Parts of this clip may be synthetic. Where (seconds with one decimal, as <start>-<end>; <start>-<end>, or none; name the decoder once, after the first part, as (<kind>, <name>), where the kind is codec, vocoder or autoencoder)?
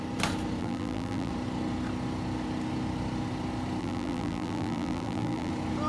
0.6-1.3 (vocoder, BigVGAN v2); 3.8-5.5